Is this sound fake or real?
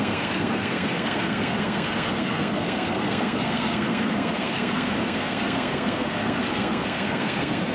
fake